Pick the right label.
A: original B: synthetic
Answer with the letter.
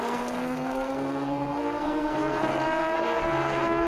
B